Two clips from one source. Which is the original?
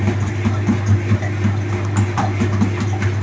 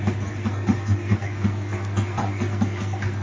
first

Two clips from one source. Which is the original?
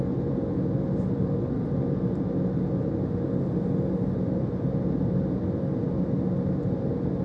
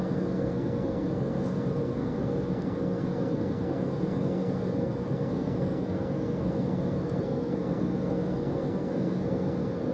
first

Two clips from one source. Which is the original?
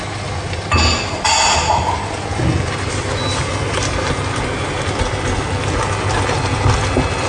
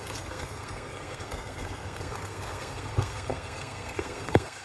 first